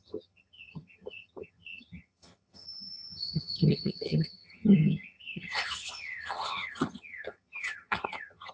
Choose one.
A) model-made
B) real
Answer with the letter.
A